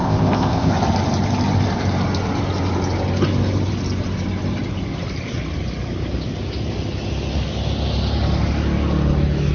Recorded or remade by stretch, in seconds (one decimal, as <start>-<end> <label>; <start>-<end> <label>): 0.0-0.7 remade; 0.7-9.5 recorded